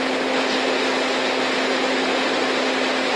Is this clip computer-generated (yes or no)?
no